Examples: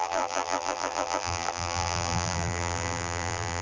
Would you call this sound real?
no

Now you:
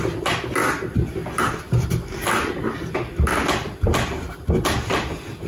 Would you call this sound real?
yes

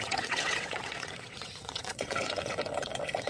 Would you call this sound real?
no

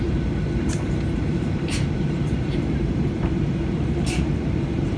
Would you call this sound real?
no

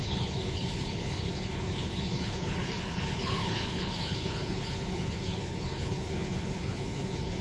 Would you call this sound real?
no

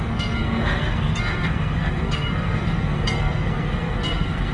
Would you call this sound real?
no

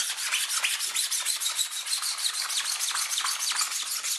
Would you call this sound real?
yes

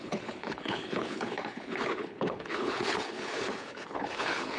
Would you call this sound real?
no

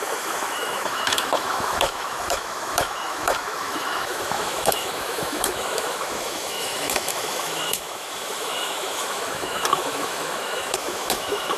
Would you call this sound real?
no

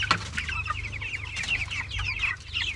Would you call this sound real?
yes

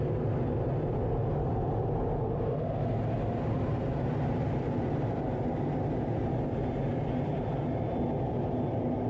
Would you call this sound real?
yes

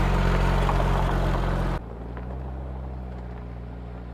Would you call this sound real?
yes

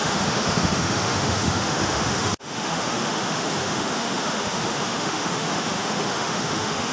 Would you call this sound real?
no